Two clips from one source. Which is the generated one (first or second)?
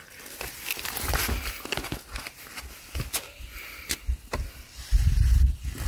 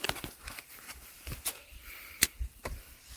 second